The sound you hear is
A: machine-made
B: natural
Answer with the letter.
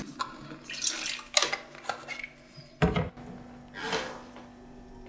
B